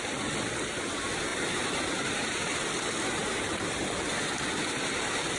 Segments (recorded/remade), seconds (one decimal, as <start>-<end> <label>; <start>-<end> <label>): 0.0-1.3 recorded; 1.3-2.6 remade; 2.6-3.2 recorded; 3.2-4.1 remade; 4.1-5.4 recorded